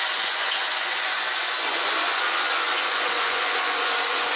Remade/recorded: remade